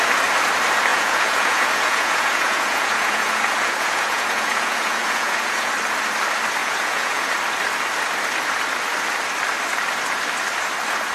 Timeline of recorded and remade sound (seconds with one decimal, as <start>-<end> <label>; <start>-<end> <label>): 0.0-0.9 recorded; 0.9-5.7 remade; 5.7-6.6 recorded; 6.6-7.3 remade; 7.3-11.1 recorded